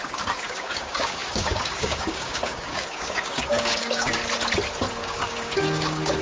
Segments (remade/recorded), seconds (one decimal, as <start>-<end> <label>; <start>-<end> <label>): 0.0-4.2 remade; 4.2-4.9 recorded; 4.9-6.2 remade